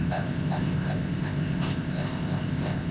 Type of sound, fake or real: fake